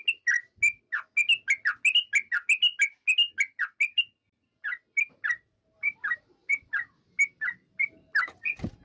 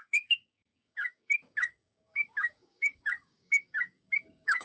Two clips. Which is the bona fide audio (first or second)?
first